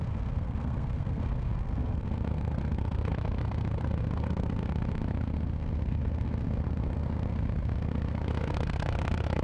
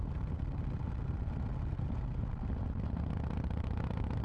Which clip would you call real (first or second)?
second